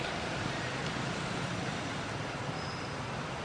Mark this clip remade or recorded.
recorded